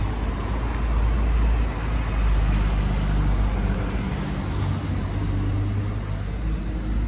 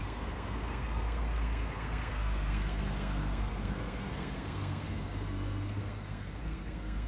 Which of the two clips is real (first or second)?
first